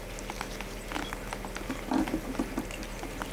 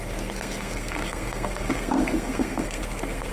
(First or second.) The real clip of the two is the first